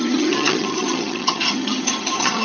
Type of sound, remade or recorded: remade